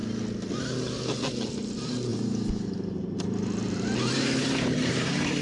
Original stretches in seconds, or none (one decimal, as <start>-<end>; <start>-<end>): 0.0-2.1